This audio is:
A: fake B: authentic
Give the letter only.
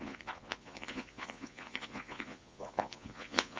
A